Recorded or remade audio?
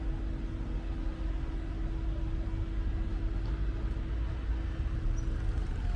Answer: recorded